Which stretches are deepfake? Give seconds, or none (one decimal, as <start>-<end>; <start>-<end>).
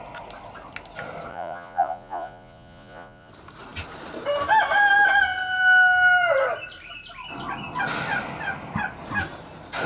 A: 1.3-3.3